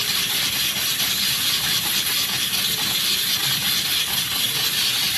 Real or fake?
real